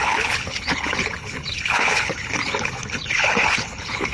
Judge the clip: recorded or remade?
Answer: remade